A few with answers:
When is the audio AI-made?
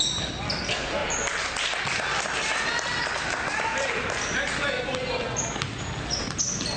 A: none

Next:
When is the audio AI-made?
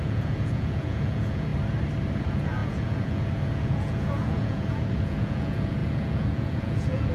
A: 0.0-1.5 (vocoder, Vocos); 2.2-7.1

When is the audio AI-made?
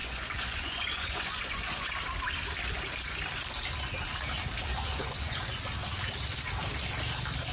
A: 0.0-1.9 (vocoder, Vocos); 4.7-5.6